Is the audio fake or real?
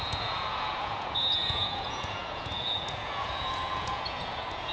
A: fake